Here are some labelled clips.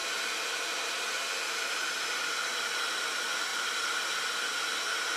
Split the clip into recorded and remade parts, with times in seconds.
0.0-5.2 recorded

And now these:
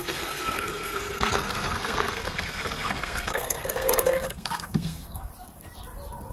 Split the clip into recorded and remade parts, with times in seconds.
0.0-5.3 remade; 5.3-6.3 recorded

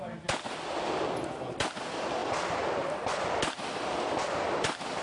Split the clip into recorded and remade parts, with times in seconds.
0.0-5.0 recorded

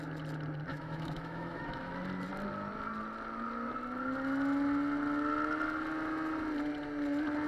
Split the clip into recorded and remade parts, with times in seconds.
0.0-0.7 recorded; 0.7-1.9 remade; 1.9-7.5 recorded

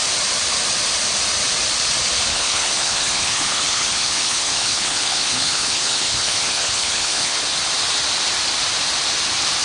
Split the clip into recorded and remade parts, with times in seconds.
0.0-2.3 recorded; 2.3-7.4 remade; 7.4-9.6 recorded

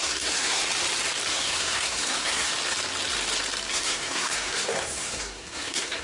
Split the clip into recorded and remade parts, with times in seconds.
0.0-0.6 remade; 0.6-1.3 recorded; 1.3-2.5 remade; 2.5-3.7 recorded; 3.7-6.0 remade

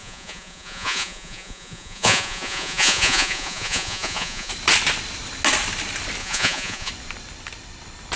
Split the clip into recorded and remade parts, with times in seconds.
0.0-4.5 remade; 4.5-6.2 recorded; 6.2-6.9 remade; 6.9-8.2 recorded

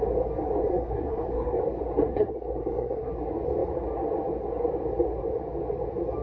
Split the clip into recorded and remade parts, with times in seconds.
0.0-0.7 recorded; 0.7-1.6 remade; 1.6-2.1 recorded; 2.1-3.1 remade; 3.1-6.2 recorded